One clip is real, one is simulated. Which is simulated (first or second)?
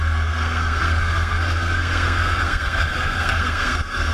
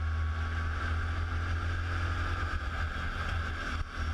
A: first